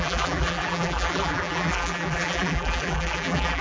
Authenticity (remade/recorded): remade